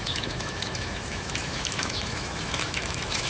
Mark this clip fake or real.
fake